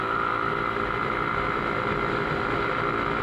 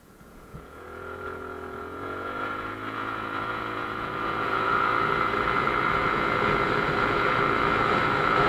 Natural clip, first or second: first